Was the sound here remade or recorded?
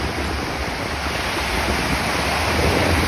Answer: recorded